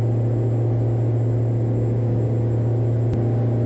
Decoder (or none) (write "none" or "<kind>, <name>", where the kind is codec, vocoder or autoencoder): none